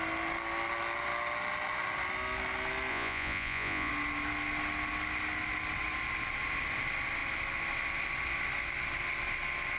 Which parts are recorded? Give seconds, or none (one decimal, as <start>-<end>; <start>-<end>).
0.0-2.9; 3.9-9.8

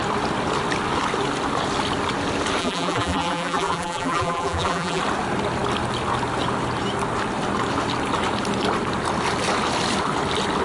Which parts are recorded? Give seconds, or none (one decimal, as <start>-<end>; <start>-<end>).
0.0-2.6; 5.0-10.6

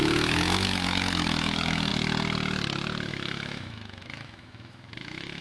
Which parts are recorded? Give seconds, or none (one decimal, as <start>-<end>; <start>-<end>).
1.9-3.1